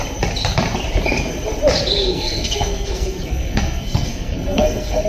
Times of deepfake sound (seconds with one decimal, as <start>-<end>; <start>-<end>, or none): 2.0-5.1